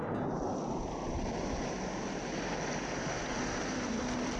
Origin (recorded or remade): recorded